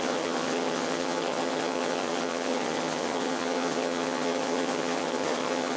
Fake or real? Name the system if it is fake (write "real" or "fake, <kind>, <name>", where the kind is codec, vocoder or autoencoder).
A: fake, vocoder, HiFi-GAN